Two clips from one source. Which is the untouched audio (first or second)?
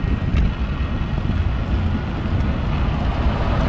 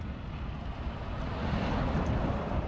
first